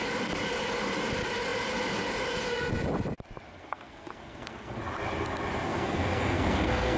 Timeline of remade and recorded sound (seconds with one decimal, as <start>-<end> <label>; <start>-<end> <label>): 0.0-3.5 recorded; 3.5-4.8 remade; 4.8-5.7 recorded; 5.7-7.0 remade